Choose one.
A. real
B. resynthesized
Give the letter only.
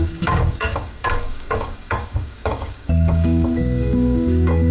B